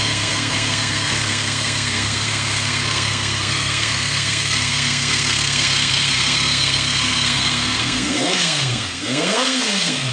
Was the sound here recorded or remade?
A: remade